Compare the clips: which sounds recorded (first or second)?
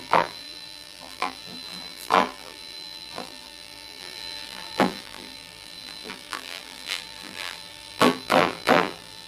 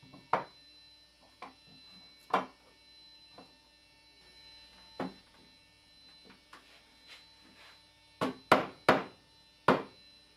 second